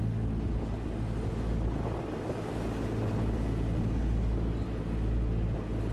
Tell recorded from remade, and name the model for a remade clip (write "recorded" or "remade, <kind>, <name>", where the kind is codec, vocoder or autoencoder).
recorded